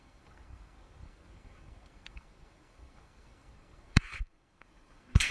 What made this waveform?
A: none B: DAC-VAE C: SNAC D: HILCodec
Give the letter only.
C